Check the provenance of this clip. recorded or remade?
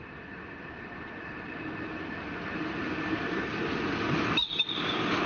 remade